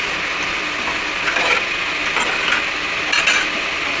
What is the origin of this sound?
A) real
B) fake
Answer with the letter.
A